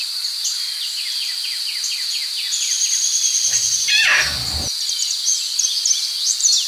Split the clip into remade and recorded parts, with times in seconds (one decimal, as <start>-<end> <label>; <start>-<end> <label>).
0.0-6.7 recorded